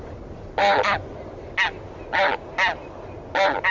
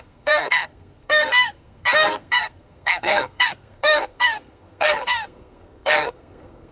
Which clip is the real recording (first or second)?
first